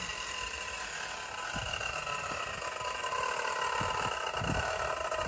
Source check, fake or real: real